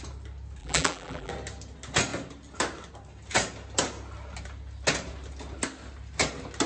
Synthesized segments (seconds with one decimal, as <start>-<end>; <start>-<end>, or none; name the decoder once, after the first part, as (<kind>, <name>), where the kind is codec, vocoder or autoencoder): 0.6-1.3 (vocoder, BigVGAN v2)